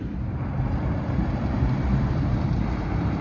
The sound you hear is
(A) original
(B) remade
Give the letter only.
B